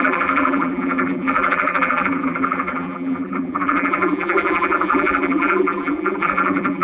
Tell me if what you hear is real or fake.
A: fake